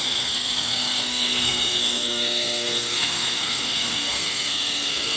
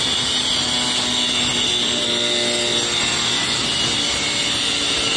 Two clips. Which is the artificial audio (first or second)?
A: first